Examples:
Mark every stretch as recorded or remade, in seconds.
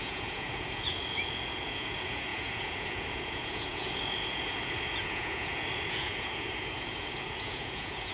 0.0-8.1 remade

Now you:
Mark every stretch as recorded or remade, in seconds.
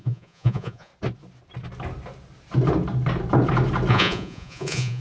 0.0-0.9 remade; 0.9-3.9 recorded; 3.9-5.0 remade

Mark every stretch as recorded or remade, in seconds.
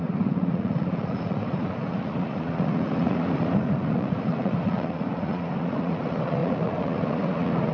0.0-7.7 remade